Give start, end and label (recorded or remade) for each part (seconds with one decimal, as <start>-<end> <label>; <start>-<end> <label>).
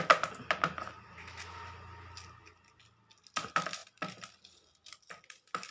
0.0-5.7 recorded